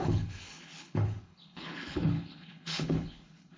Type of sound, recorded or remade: remade